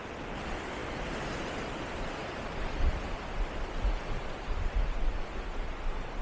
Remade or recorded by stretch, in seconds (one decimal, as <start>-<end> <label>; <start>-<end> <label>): 0.0-6.2 recorded